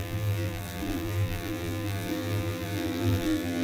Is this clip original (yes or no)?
no